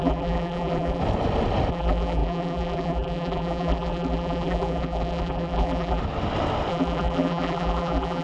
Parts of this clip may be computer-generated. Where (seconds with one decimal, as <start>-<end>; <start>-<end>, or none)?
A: 0.0-1.0; 1.7-6.0; 6.7-8.2